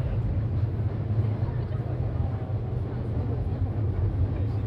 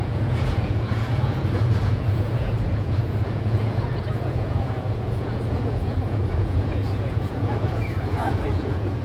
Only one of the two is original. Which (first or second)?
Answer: first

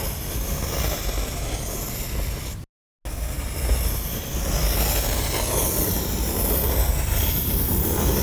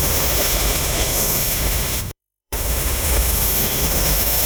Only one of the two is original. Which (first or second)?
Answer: first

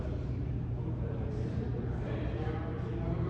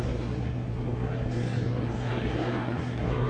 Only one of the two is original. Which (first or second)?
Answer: first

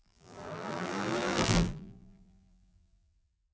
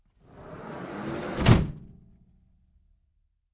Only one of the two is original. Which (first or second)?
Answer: second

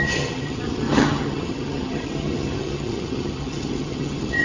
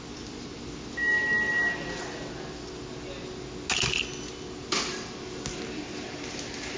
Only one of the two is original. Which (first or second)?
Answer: second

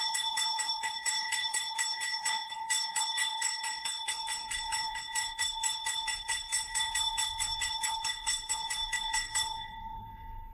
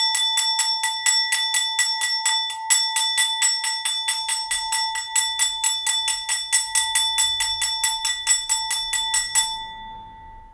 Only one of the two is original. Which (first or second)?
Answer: second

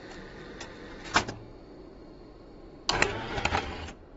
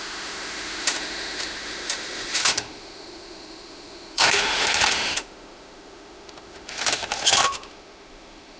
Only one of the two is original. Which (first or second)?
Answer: first